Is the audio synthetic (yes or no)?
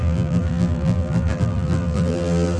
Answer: yes